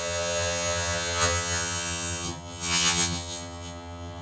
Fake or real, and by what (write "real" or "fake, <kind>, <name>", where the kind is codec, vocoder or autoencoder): fake, vocoder, HiFi-GAN